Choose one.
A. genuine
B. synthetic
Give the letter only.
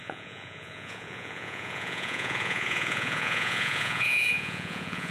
B